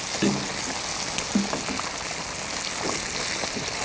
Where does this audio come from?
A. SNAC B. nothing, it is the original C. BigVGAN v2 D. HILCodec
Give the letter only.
B